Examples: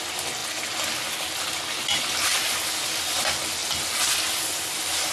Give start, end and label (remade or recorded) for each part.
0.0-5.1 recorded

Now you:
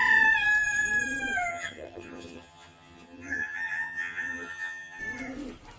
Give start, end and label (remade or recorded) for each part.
0.0-1.5 recorded; 1.5-5.0 remade; 5.0-5.8 recorded

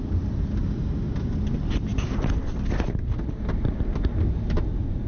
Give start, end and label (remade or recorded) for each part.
0.0-5.1 recorded

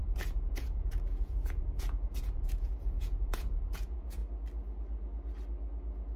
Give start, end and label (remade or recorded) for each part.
0.0-4.2 remade; 4.2-6.2 recorded

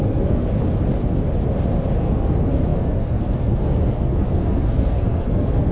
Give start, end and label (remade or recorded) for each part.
0.0-0.6 remade; 0.6-2.0 recorded; 2.0-5.7 remade

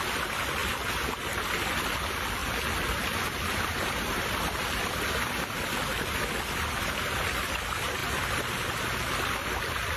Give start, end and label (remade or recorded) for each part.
0.0-0.6 remade; 0.6-1.9 recorded; 1.9-2.4 remade; 2.4-2.9 recorded; 2.9-8.0 remade; 8.0-10.0 recorded